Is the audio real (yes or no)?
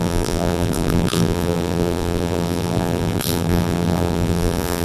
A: no